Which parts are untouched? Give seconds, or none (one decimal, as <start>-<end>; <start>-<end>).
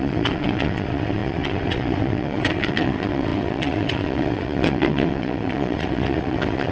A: none